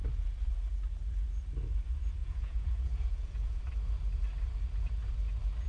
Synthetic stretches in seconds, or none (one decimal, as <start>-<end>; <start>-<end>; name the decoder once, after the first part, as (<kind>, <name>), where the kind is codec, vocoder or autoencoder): 2.2-3.6 (vocoder, Vocos)